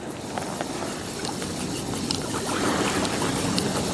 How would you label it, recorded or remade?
recorded